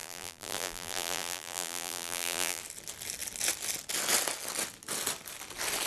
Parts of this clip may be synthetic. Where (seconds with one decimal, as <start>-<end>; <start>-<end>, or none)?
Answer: 0.0-2.6